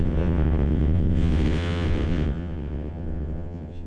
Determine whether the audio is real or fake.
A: fake